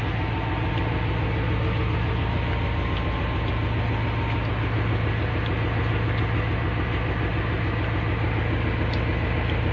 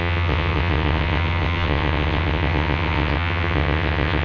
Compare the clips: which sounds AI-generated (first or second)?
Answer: second